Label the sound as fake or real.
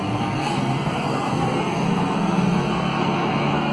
fake